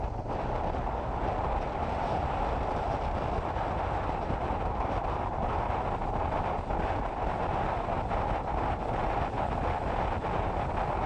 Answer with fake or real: real